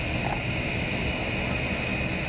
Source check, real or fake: real